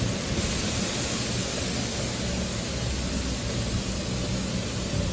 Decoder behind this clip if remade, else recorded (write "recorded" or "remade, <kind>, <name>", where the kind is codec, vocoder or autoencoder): recorded